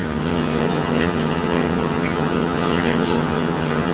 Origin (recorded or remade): remade